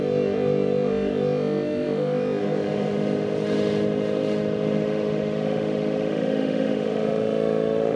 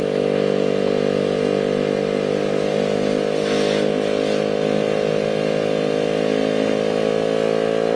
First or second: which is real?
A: second